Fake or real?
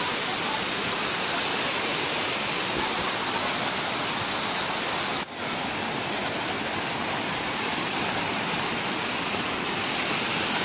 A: real